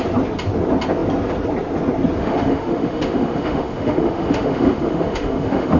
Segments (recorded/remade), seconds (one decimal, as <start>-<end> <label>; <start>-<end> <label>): 0.0-2.2 recorded; 2.2-5.8 remade